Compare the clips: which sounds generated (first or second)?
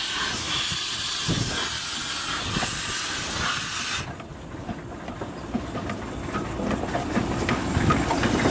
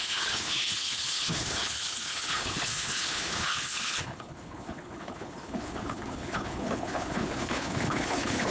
second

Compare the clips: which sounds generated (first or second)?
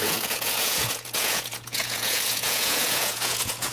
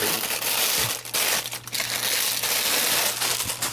first